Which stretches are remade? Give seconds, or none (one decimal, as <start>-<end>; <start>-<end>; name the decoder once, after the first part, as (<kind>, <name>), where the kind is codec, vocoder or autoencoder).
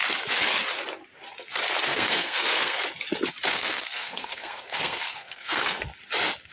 1.9-2.8 (codec, SNAC); 3.5-5.8